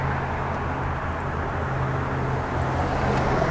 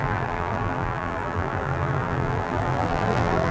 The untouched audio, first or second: first